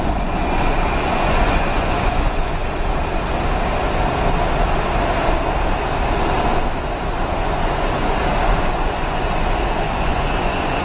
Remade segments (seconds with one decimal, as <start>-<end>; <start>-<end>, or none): 0.0-2.6; 7.4-10.8